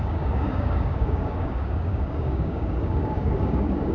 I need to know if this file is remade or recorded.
remade